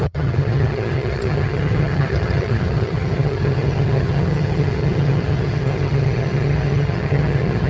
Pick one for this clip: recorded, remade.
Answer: remade